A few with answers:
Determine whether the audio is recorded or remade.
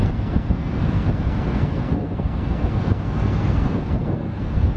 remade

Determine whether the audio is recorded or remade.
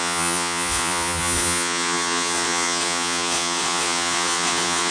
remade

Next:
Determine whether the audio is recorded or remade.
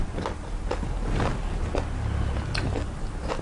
recorded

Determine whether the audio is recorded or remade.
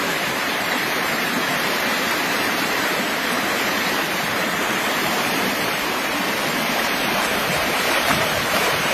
remade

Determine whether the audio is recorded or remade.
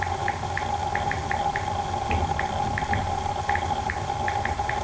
recorded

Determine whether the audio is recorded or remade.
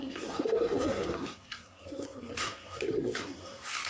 remade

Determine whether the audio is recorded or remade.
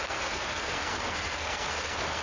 remade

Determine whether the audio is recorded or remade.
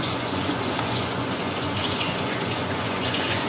remade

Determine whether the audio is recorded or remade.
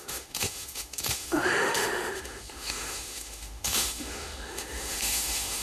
remade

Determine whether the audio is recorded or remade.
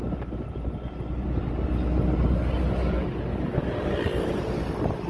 recorded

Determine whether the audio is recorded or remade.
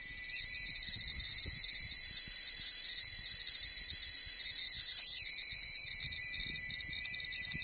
recorded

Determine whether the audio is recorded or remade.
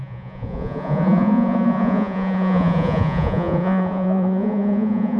remade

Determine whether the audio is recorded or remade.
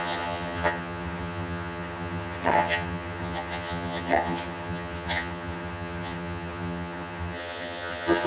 remade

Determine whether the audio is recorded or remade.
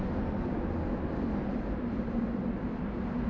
recorded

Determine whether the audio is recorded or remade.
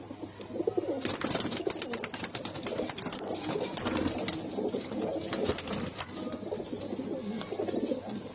recorded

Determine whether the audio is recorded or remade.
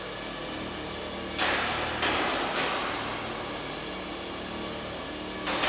recorded